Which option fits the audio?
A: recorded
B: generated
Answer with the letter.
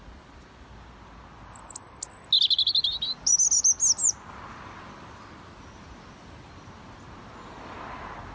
A